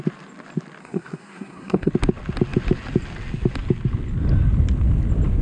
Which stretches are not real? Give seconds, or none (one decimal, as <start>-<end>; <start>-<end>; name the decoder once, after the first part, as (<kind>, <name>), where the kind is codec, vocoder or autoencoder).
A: 0.8-1.9 (codec, SNAC)